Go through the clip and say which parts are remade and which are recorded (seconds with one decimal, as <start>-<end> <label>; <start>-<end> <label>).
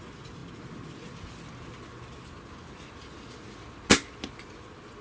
0.0-5.0 recorded